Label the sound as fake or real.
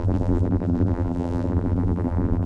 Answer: fake